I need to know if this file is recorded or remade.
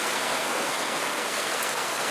remade